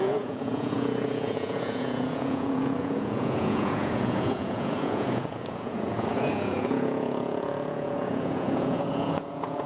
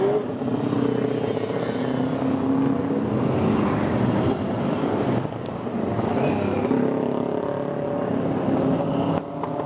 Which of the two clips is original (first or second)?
second